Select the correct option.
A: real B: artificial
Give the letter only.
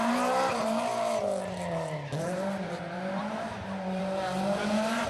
B